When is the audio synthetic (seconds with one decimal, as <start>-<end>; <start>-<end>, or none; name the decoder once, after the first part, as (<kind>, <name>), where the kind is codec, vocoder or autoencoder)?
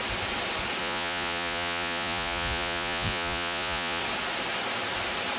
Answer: 0.8-4.0 (vocoder, Vocos)